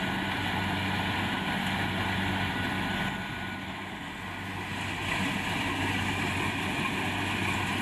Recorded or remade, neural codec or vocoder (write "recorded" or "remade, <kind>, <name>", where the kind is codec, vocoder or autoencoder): recorded